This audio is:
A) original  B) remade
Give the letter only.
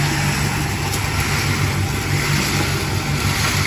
A